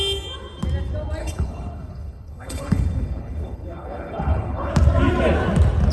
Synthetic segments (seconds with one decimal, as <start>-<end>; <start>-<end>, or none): 1.2-4.7